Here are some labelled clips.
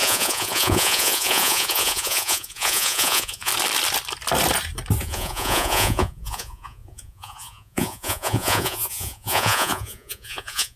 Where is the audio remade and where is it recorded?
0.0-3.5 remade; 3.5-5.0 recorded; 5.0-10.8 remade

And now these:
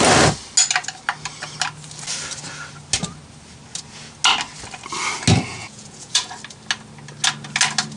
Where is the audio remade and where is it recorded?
0.0-5.5 recorded; 5.5-6.3 remade; 6.3-8.0 recorded